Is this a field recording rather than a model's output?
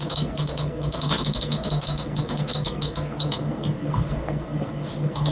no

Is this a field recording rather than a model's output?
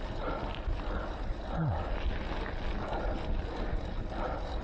yes